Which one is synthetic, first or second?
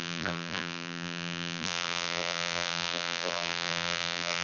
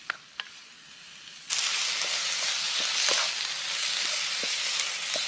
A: first